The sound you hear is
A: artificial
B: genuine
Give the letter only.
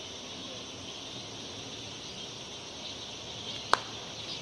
B